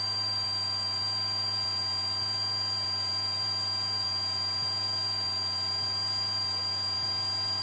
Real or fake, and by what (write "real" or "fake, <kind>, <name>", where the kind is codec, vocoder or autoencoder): real